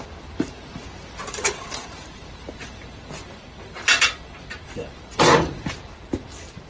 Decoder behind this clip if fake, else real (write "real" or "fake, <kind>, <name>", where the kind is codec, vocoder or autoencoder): fake, vocoder, BigVGAN v2